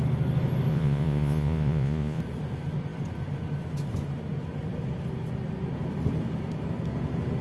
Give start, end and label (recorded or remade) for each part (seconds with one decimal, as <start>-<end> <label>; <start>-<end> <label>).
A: 0.0-0.7 recorded; 0.7-2.2 remade; 2.2-7.4 recorded